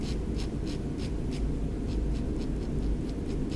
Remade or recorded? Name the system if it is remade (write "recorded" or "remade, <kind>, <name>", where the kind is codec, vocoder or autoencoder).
recorded